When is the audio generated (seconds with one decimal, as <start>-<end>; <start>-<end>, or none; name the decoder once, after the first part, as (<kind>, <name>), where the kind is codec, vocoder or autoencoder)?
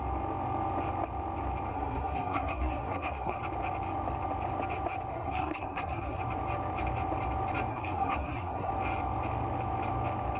1.7-3.4 (codec, SNAC); 5.1-6.2; 7.7-8.7